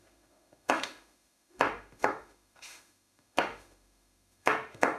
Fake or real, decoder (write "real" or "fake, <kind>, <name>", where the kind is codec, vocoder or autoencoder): fake, autoencoder, DAC-VAE